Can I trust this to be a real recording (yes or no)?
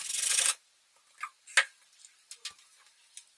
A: yes